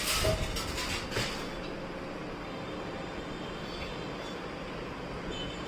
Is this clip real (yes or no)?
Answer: yes